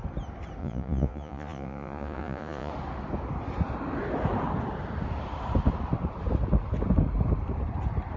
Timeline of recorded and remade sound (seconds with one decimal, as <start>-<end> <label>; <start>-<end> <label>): 0.0-0.6 recorded; 0.6-2.7 remade; 2.7-8.2 recorded